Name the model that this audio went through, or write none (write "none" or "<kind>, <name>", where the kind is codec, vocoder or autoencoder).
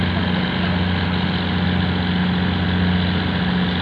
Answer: none